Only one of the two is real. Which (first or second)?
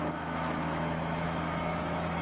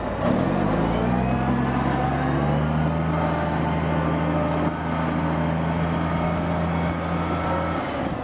second